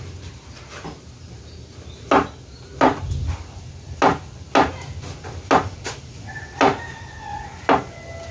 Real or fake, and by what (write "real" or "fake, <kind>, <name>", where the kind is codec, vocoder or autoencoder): real